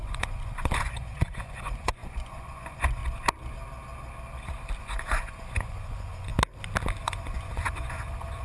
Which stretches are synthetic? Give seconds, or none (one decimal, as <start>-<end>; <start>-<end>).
0.0-3.0; 4.8-6.3; 7.0-8.4